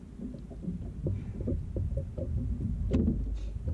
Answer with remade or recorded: recorded